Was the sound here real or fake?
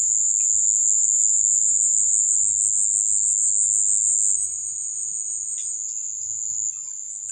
real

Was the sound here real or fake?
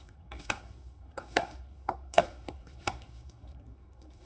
fake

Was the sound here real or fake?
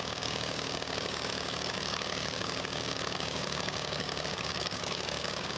fake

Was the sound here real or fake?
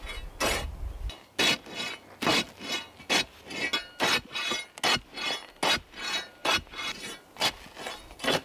real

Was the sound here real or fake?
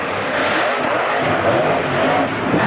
real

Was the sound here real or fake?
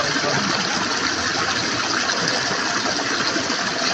real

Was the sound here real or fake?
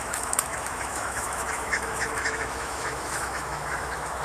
fake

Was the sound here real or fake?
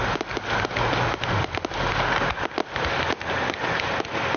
real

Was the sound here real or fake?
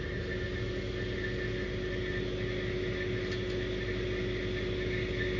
real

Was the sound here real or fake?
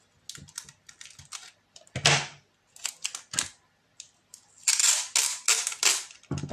real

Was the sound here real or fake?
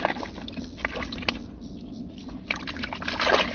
real